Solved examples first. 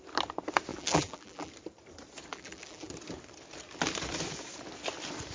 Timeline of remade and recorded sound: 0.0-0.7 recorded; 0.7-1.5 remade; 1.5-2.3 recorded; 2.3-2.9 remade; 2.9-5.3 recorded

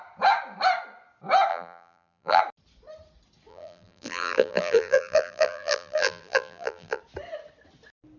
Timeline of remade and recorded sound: 0.0-1.5 recorded; 1.5-2.4 remade; 2.4-3.5 recorded; 3.5-7.0 remade; 7.0-8.2 recorded